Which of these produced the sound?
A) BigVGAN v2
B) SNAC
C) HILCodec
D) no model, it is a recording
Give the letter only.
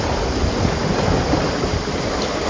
D